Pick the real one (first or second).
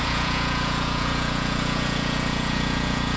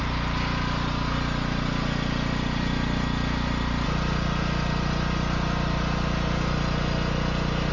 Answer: second